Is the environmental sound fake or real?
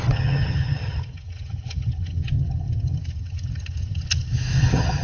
fake